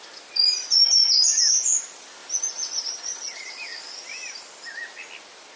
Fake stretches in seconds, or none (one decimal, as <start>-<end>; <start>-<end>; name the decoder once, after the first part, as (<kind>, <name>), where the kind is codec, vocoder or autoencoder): 0.0-1.0 (vocoder, BigVGAN v2); 1.8-2.2; 2.8-3.7; 4.2-5.6